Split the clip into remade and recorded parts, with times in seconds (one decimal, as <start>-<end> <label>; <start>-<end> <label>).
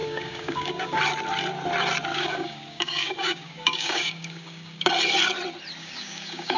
0.0-1.0 remade; 1.0-2.1 recorded; 2.1-4.9 remade; 4.9-5.8 recorded; 5.8-6.6 remade